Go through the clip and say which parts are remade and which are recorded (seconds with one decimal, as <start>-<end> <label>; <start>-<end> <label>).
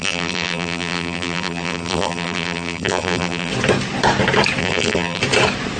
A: 0.0-3.5 remade; 3.5-4.6 recorded; 4.6-5.2 remade; 5.2-5.8 recorded